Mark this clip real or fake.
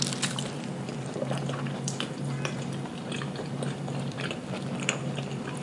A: fake